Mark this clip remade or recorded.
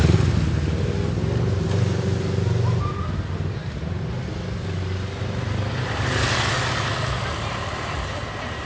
recorded